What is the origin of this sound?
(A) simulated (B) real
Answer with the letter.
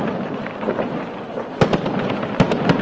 B